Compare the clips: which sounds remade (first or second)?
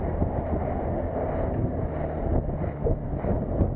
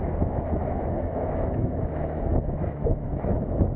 second